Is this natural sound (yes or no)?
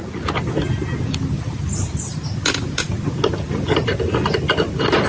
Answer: yes